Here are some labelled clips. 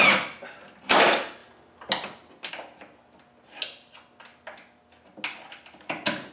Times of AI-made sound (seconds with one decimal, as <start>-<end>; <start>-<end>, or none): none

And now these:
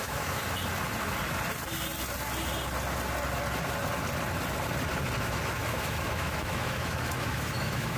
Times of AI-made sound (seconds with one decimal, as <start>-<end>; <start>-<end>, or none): 0.0-0.4; 5.2-8.0

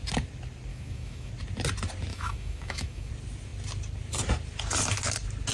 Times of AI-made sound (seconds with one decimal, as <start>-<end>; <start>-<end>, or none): 0.7-1.3; 2.1-3.1